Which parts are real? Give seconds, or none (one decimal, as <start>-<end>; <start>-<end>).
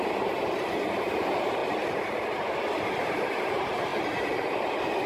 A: 1.6-2.8; 3.9-5.1